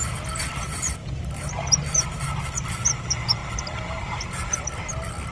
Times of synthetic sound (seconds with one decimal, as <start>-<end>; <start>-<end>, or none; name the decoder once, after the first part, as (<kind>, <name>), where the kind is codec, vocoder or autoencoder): 1.0-2.2 (vocoder, BigVGAN v2)